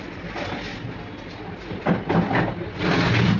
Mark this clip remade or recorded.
recorded